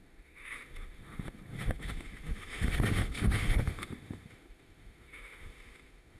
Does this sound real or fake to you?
fake